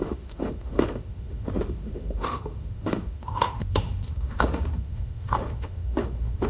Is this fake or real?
fake